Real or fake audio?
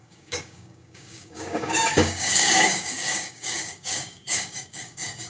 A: fake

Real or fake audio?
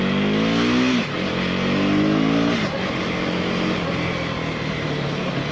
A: real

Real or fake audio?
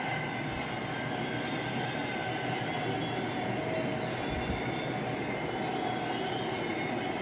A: real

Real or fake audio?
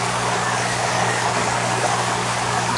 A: fake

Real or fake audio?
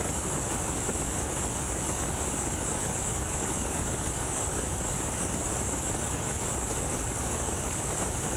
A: fake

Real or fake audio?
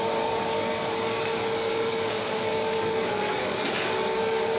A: fake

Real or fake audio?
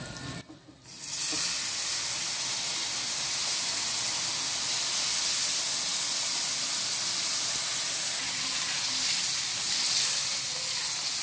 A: real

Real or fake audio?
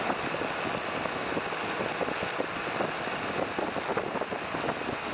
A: real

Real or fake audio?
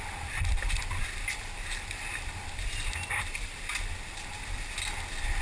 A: real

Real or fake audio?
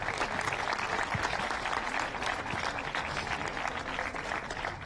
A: real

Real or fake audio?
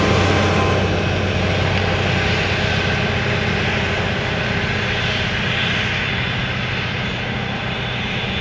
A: real